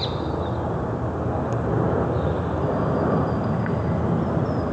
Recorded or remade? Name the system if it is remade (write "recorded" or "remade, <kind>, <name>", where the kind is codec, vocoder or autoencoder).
recorded